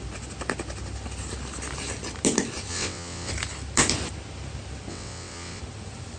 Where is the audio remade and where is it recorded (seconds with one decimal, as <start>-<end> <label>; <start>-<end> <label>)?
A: 0.0-2.7 recorded; 2.7-3.3 remade; 3.3-4.9 recorded; 4.9-5.6 remade; 5.6-6.2 recorded